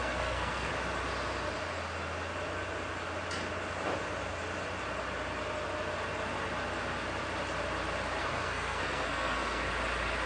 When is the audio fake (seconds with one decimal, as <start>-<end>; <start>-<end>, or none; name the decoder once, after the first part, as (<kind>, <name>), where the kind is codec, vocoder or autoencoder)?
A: 0.0-0.7 (codec, SNAC); 8.2-9.7